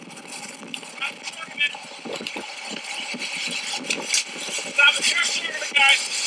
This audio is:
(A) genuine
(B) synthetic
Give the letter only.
A